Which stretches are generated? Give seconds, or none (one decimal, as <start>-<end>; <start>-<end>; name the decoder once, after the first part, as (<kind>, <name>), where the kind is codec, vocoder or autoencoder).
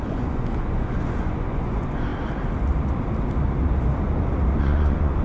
0.0-2.1 (vocoder, Vocos); 4.6-5.2